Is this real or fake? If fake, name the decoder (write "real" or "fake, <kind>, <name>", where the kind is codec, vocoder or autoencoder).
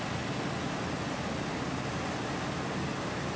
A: real